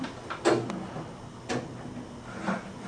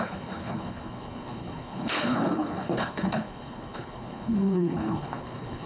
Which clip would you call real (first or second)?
first